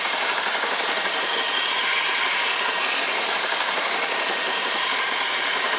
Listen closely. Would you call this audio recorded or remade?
remade